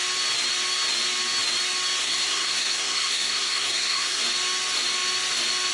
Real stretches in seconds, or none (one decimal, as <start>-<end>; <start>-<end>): 0.0-2.0; 4.2-5.7